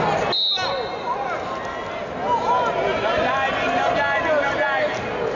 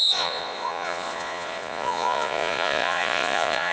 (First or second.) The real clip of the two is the first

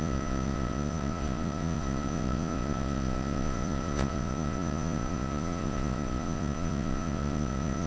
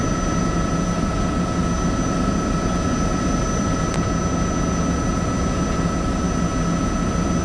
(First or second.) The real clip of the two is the second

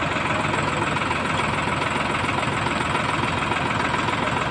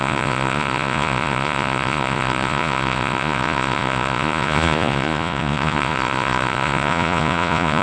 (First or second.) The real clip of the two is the first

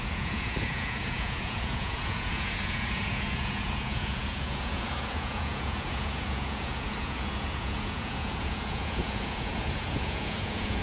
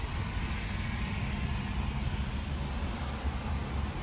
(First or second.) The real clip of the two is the second